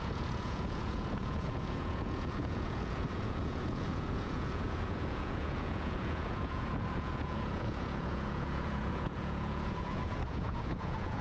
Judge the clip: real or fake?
fake